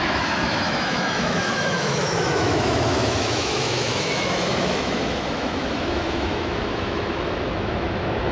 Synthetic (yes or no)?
yes